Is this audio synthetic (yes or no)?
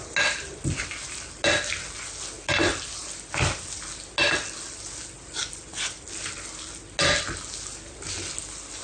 no